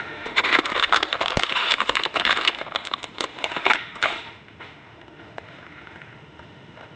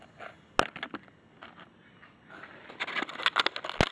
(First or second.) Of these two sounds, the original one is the second